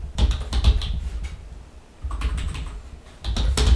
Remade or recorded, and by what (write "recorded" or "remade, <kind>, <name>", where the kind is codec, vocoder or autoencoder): recorded